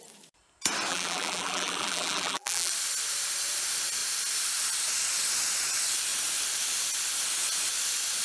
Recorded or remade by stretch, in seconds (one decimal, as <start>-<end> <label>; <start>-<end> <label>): 0.0-0.9 recorded; 0.9-2.7 remade; 2.7-8.2 recorded